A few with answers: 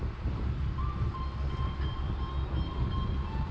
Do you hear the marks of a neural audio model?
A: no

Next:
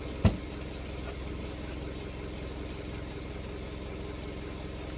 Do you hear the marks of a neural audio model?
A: no